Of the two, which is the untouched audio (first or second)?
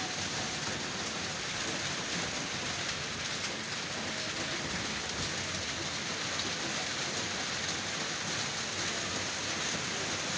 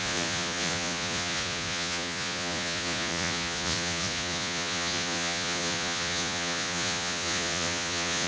first